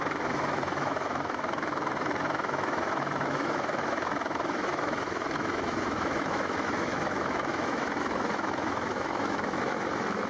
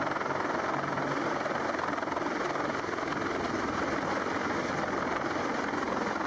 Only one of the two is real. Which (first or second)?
second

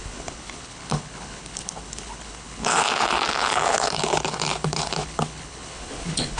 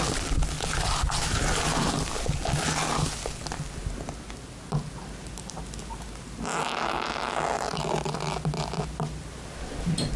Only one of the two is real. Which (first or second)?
second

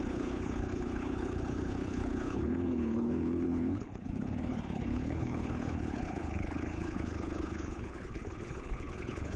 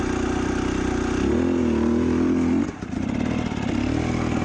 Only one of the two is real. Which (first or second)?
second